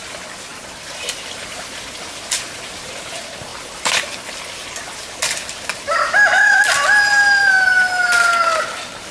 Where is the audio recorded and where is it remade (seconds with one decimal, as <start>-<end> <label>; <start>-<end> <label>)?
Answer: 0.0-9.1 recorded